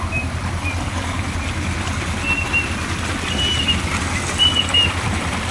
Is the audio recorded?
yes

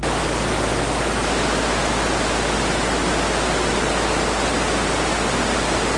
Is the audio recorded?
yes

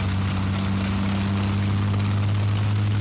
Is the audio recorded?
yes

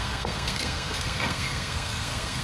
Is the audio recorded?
no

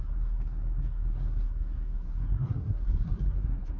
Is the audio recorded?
no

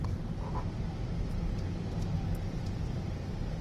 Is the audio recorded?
yes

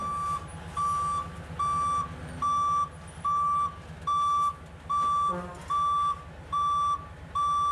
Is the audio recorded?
yes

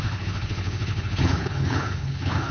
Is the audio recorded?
no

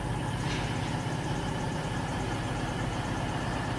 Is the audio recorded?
no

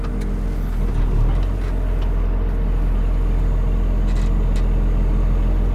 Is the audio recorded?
yes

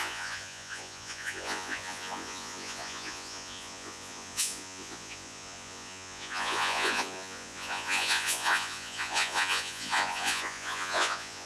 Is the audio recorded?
no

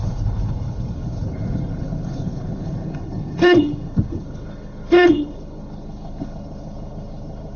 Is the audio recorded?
no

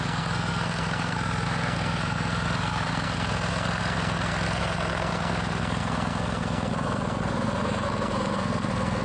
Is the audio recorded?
no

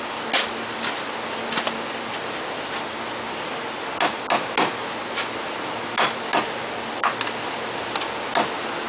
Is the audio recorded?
yes